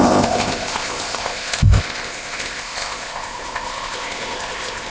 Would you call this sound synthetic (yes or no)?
yes